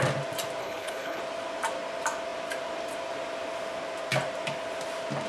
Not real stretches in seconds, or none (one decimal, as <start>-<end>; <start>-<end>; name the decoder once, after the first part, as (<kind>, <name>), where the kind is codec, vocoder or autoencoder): 0.6-1.2 (codec, HILCodec)